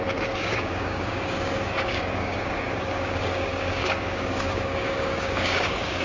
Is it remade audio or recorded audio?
remade